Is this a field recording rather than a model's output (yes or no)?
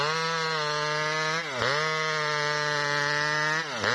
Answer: yes